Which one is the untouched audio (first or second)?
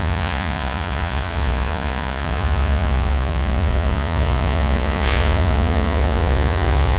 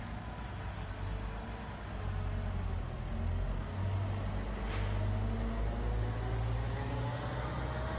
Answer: second